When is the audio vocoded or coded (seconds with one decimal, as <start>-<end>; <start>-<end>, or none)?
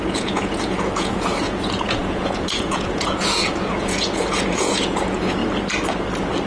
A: 0.0-5.4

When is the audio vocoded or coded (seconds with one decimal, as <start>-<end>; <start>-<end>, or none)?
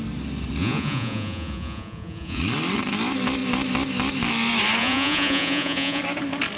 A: 0.6-2.4; 4.8-6.0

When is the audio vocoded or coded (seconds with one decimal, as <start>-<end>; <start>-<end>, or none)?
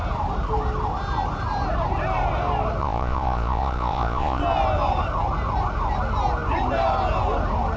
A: 2.8-4.4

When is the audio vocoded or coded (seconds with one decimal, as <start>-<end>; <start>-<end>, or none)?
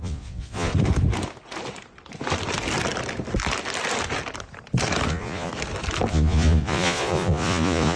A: 0.0-0.7; 5.1-5.5; 6.1-8.0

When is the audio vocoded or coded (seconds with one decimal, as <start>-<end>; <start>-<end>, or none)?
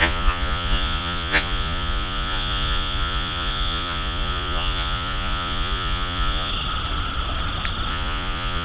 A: 0.0-6.5; 7.9-8.6